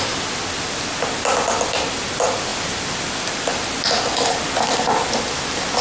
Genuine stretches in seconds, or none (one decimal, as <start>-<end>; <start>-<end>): 0.0-5.8